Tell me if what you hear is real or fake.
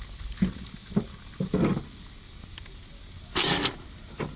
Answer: real